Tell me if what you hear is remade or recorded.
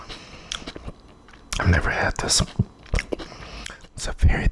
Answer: recorded